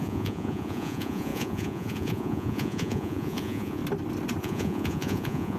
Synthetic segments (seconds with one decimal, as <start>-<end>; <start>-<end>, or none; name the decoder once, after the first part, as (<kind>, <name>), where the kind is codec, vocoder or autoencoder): 0.0-3.8 (vocoder, Vocos); 4.4-5.6